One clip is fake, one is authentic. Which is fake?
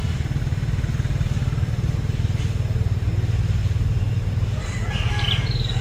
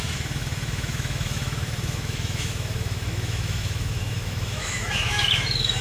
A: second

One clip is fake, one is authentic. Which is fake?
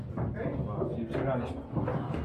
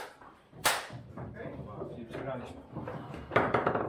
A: second